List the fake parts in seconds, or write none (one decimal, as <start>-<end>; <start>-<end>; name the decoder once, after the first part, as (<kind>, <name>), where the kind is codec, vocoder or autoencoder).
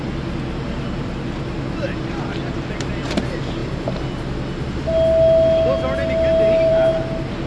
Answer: none